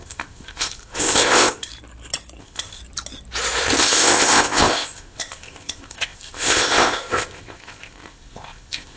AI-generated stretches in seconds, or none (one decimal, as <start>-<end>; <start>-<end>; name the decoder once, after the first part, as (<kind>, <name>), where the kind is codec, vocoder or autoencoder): 0.0-1.7 (codec, ZipCodec); 2.4-2.8; 3.8-9.0